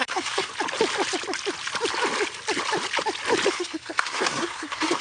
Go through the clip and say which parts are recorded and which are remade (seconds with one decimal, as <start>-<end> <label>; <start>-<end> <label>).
0.0-0.5 remade; 0.5-3.5 recorded; 3.5-5.0 remade